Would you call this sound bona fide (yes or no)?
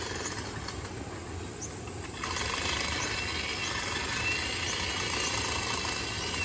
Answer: yes